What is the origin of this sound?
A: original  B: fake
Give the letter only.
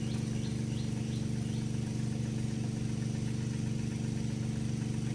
A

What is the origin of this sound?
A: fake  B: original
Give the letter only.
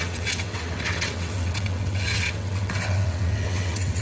A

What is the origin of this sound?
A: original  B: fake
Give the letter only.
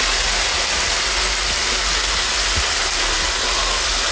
A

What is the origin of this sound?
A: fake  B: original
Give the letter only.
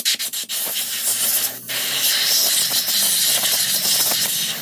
B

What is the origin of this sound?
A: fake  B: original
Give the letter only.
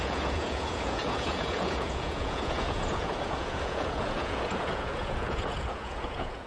A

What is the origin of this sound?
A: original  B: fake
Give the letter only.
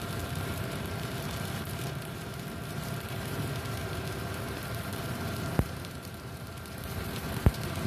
B